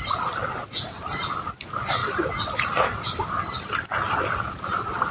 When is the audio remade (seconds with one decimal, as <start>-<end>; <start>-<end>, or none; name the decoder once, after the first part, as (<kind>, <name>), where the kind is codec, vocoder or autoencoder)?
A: none